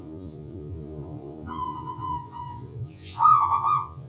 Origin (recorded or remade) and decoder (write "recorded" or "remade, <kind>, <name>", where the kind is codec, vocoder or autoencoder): remade, vocoder, Vocos